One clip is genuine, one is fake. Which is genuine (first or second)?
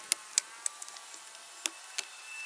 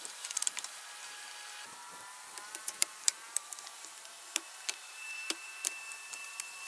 first